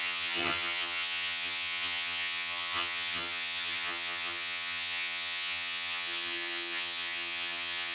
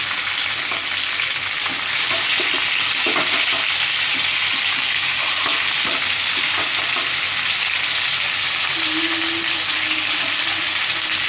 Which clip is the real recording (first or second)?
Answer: second